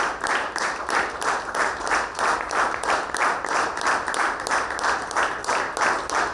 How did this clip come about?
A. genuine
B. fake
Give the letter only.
A